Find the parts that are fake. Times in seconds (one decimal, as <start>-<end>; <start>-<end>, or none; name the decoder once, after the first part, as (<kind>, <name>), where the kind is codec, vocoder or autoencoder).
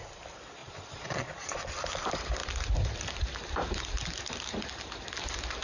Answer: 0.6-1.6 (vocoder, Vocos)